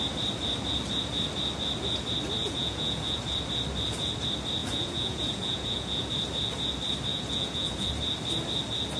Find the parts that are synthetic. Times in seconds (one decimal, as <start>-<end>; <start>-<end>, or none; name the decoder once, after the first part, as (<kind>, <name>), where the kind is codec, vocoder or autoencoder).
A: 2.4-3.2 (vocoder, Vocos); 4.6-6.1; 7.1-7.9